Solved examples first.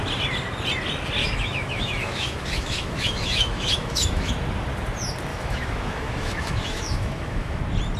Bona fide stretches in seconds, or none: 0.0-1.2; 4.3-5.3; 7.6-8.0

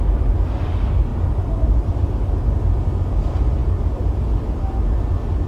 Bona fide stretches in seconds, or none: 0.0-5.5

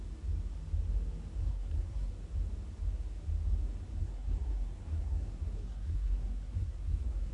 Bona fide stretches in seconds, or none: 0.0-1.4; 2.1-4.0

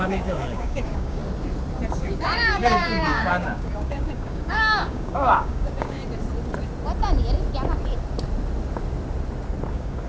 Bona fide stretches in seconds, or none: 1.2-2.0; 6.0-9.7